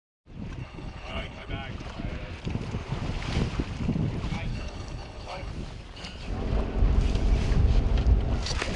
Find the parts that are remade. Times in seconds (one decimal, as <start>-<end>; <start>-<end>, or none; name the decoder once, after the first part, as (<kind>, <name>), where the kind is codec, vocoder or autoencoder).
0.6-1.5 (codec, HILCodec); 4.5-5.5